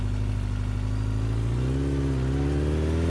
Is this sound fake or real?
real